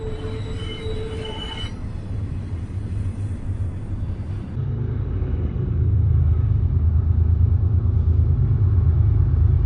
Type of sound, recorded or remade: recorded